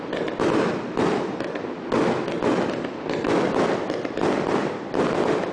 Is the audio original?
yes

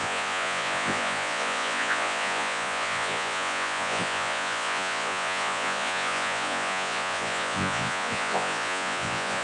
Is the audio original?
no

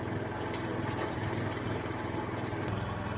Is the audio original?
yes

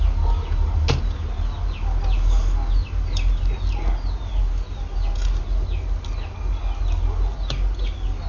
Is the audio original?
yes